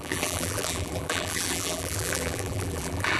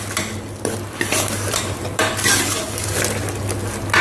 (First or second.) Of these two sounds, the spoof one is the first